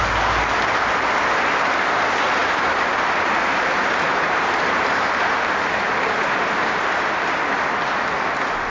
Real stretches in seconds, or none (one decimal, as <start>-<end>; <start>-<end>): 0.0-2.4; 6.8-8.7